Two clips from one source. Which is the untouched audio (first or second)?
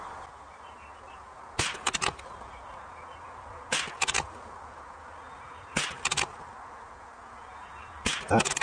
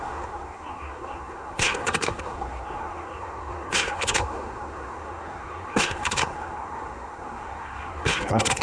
first